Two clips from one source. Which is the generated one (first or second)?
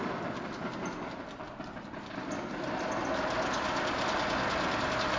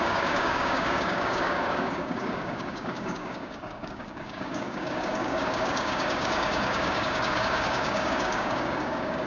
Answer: second